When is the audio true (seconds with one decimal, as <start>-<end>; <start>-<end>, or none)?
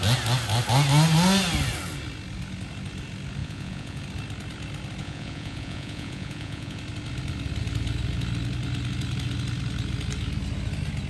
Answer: 0.0-3.4; 4.0-5.0; 6.8-11.1